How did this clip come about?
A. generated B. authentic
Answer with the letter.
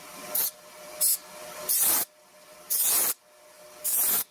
B